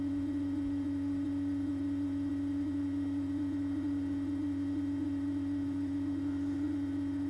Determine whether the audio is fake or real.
fake